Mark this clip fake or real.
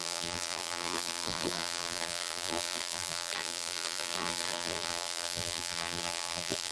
fake